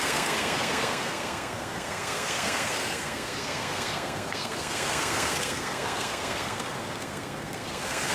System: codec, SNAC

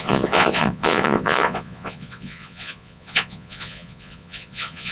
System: vocoder, Vocos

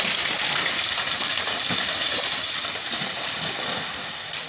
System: vocoder, BigVGAN v2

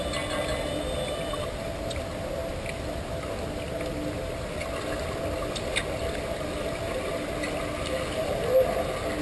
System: none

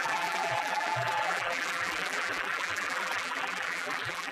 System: vocoder, BigVGAN v2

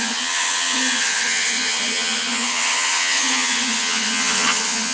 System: vocoder, HiFi-GAN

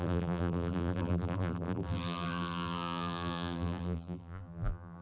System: vocoder, BigVGAN v2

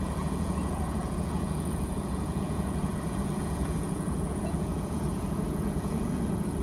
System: vocoder, Vocos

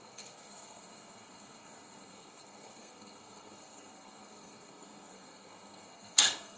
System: codec, SNAC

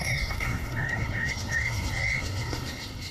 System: codec, SNAC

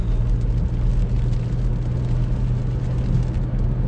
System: none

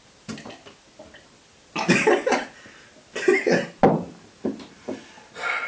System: none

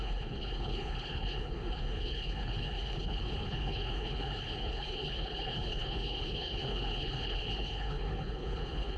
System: codec, HILCodec